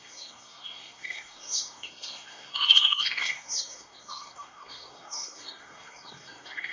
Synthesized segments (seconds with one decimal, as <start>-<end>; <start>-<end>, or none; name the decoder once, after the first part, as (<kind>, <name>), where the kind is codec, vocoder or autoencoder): 0.0-6.7 (codec, SNAC)